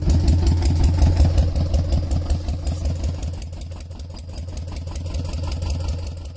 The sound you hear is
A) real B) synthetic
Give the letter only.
A